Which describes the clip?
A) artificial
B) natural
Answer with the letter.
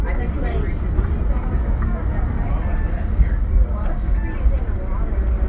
B